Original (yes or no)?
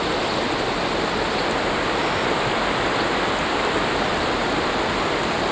yes